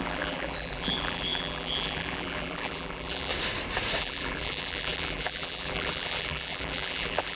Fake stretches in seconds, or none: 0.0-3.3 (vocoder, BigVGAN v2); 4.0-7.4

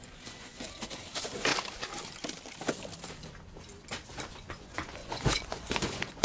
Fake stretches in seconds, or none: 0.0-1.5 (vocoder, Vocos); 4.3-6.2

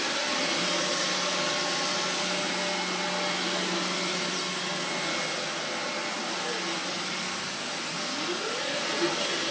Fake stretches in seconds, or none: none

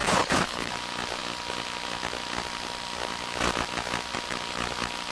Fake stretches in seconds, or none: 0.0-0.7 (codec, HILCodec)

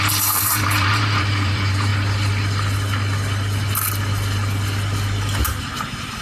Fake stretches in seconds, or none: 0.0-1.9 (vocoder, BigVGAN v2); 5.6-6.2

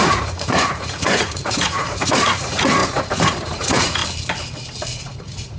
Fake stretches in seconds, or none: 0.0-4.0 (vocoder, Vocos); 5.0-5.6